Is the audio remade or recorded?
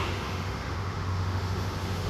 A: remade